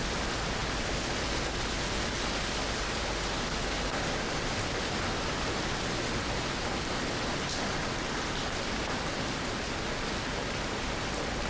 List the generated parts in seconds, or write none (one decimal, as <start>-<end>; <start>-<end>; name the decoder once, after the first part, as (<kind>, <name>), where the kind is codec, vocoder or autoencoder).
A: none